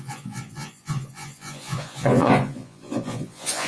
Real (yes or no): no